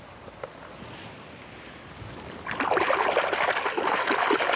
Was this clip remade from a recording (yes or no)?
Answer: no